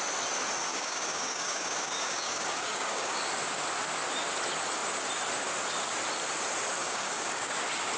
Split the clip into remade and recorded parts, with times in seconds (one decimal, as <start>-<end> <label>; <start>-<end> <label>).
0.0-0.7 recorded; 0.7-3.2 remade; 3.2-6.8 recorded; 6.8-7.5 remade; 7.5-8.0 recorded